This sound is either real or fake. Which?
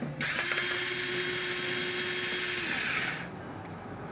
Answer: real